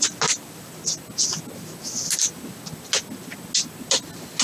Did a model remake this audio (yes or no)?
no